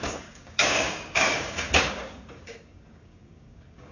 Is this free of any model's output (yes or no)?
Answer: no